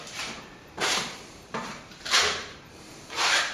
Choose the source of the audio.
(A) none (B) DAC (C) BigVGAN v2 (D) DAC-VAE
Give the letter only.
C